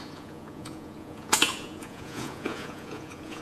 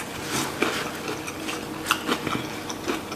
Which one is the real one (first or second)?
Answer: second